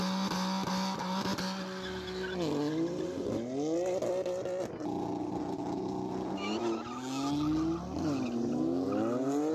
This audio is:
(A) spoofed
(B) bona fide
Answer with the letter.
B